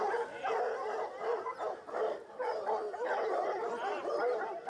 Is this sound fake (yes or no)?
no